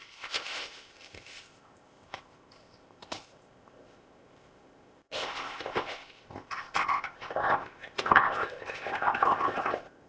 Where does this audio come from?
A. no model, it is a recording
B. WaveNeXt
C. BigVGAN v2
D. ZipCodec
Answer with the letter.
D